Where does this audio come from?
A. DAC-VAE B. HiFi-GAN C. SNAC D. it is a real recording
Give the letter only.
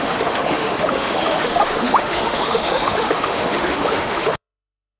A